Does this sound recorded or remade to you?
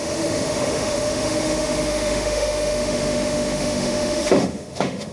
remade